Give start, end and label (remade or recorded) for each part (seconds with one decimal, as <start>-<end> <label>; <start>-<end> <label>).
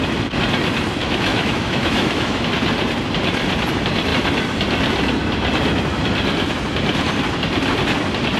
0.0-1.0 recorded; 1.0-2.5 remade; 2.5-8.4 recorded